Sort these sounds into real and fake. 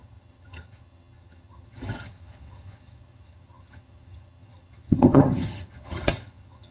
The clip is fake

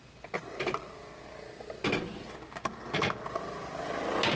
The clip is real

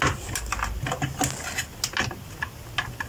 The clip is real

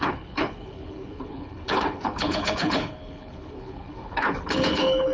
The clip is fake